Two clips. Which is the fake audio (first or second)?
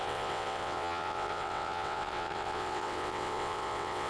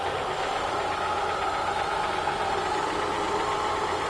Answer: first